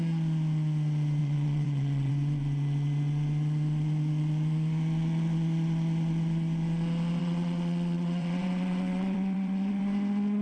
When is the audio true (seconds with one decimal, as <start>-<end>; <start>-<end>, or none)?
0.0-1.2; 2.1-7.2; 9.8-10.4